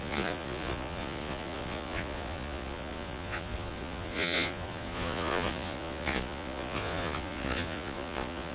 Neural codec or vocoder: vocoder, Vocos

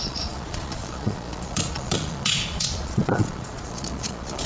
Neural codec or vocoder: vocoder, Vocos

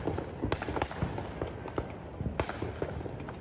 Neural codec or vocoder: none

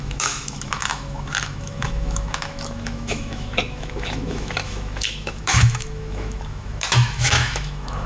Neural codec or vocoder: autoencoder, DAC-VAE